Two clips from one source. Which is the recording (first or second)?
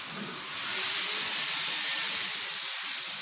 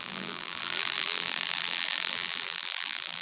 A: first